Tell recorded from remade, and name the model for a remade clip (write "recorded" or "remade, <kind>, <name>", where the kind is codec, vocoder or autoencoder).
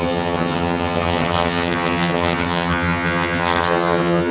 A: remade, vocoder, HiFi-GAN